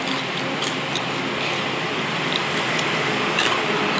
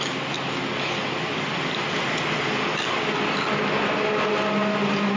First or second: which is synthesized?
first